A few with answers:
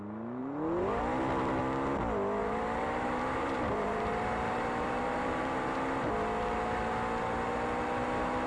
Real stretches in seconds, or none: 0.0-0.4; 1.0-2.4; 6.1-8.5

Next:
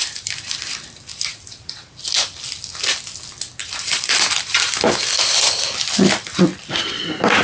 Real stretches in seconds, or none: 0.6-1.1; 1.9-3.6; 5.6-7.4

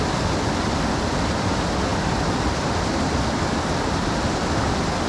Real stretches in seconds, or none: 0.0-5.1

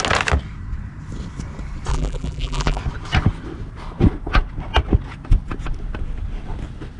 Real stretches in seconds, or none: 0.0-1.9; 2.8-7.0

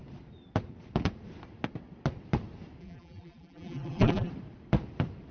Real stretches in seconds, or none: 0.0-2.8; 4.3-5.3

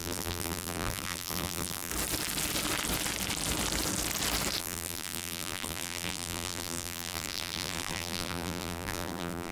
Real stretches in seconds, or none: 1.9-4.6